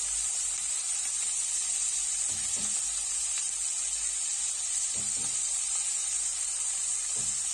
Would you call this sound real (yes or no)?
yes